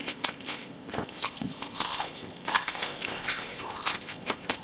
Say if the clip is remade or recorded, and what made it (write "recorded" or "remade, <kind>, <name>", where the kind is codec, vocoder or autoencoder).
remade, codec, ZipCodec